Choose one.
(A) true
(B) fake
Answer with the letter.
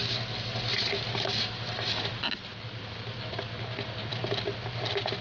A